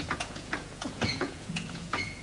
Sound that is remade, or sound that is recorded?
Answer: remade